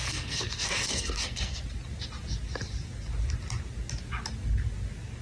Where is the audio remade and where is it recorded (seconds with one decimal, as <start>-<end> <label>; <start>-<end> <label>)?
0.0-1.6 remade; 1.6-5.2 recorded